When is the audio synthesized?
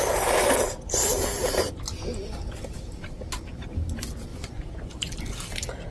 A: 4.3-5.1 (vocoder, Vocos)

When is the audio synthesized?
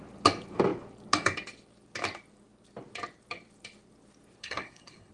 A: 4.4-5.1 (codec, SNAC)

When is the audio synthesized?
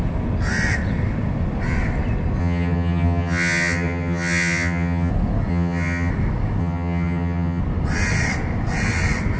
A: 2.4-5.1 (vocoder, HiFi-GAN); 5.5-6.1; 6.6-7.6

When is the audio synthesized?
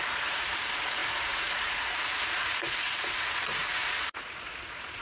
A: 0.0-5.0 (vocoder, Vocos)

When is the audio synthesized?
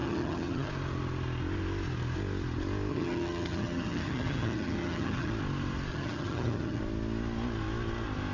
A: 0.0-0.7 (vocoder, HiFi-GAN); 2.9-5.3; 5.9-6.8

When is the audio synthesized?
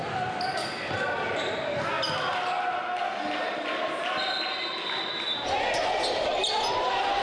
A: none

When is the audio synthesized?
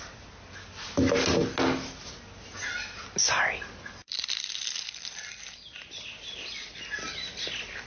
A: none